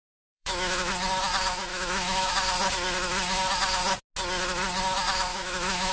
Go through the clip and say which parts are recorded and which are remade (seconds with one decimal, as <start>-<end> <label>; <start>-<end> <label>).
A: 0.0-0.9 remade; 0.9-1.7 recorded; 1.7-2.3 remade; 2.3-5.3 recorded; 5.3-5.9 remade